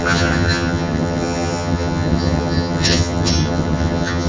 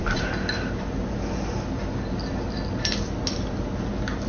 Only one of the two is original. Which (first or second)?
second